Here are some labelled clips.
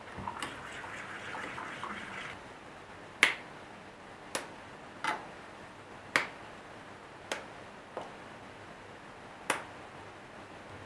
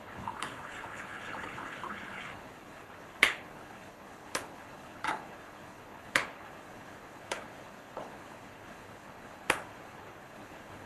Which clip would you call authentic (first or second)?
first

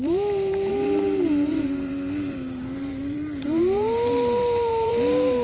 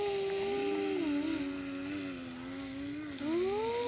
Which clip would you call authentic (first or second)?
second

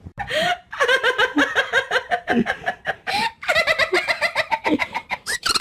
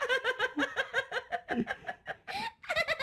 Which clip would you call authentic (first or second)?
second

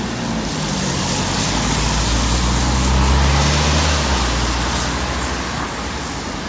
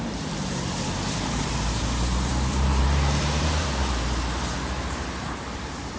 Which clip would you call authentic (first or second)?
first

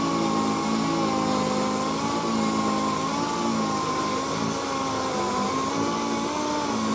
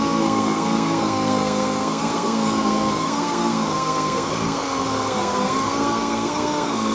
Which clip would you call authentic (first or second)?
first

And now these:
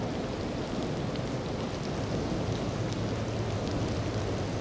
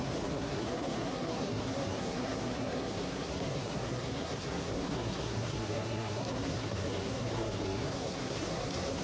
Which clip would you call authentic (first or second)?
first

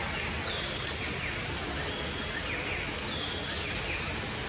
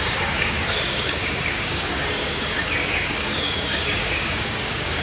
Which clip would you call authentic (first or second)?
first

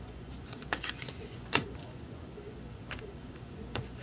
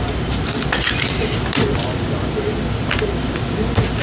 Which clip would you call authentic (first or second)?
second